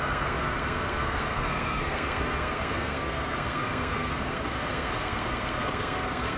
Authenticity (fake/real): fake